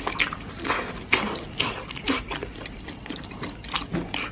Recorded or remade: recorded